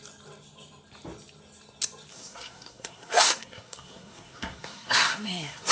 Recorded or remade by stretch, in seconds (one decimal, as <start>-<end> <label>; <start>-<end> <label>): 0.0-2.1 recorded; 2.1-5.7 remade